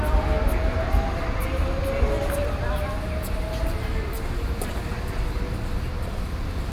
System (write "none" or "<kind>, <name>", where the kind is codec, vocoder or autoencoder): none